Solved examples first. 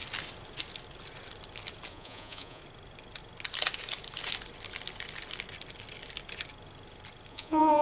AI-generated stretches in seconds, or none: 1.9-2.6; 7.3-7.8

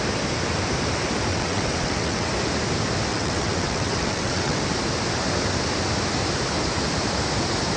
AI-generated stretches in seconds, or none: 1.3-2.3; 3.1-4.6

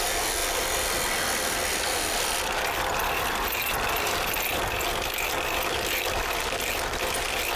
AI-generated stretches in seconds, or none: none

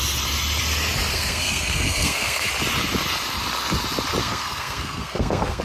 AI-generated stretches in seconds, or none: 1.1-2.5; 4.2-5.6

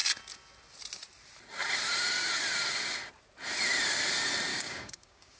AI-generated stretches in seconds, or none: 4.5-5.4

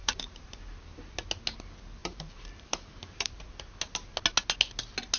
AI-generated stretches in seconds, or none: 0.0-0.6; 2.0-3.4